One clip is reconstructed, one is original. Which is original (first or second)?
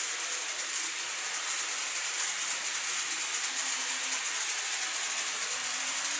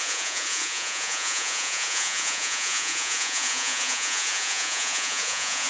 first